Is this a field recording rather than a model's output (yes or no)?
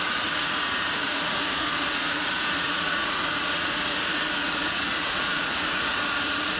no